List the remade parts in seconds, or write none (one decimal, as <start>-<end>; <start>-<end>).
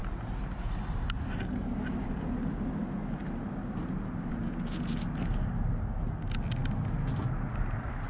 3.2-4.3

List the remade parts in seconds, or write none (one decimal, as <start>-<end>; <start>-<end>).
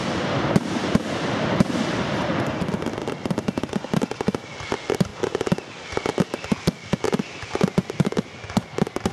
none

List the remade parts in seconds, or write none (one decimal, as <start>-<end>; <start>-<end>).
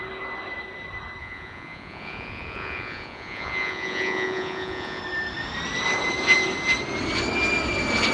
1.2-5.0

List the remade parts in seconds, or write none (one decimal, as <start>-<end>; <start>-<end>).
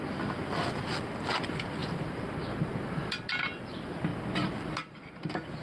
none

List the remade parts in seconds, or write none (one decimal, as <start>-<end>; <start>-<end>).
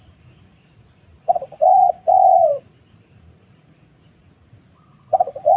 0.0-5.6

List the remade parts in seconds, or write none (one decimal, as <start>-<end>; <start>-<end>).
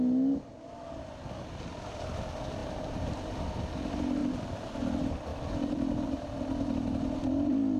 2.6-3.2; 5.3-6.2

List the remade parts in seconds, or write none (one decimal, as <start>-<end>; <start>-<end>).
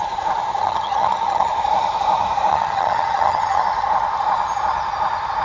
0.6-1.5; 2.5-3.6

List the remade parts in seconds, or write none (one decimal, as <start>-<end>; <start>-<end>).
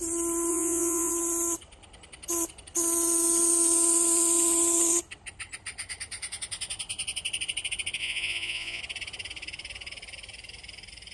0.5-1.1; 8.0-8.8